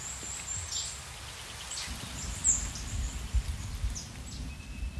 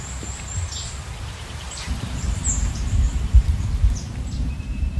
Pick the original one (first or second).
first